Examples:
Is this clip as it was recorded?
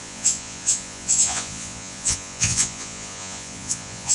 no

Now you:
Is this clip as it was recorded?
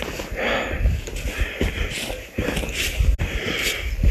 yes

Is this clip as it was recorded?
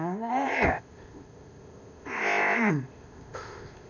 no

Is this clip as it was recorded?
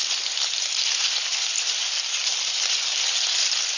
yes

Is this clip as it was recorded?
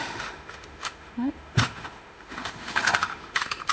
no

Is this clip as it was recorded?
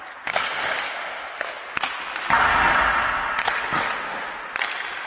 yes